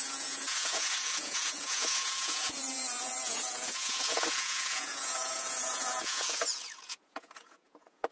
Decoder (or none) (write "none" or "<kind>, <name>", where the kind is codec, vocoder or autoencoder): vocoder, Vocos